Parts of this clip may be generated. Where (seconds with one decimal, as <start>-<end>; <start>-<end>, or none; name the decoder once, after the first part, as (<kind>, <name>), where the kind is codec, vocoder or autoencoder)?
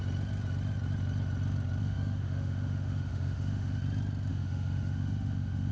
1.8-3.8 (autoencoder, DAC-VAE); 4.3-5.7